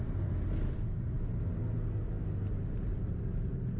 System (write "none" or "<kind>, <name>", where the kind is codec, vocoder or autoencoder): none